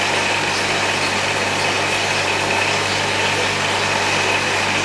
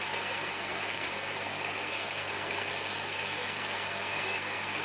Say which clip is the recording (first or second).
first